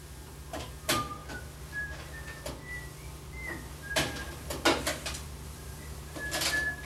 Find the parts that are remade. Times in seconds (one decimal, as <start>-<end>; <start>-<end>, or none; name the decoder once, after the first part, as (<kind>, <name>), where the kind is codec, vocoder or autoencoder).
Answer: none